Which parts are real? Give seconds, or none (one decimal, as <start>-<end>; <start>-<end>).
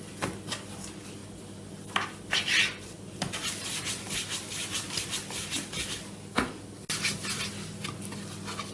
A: 0.0-8.7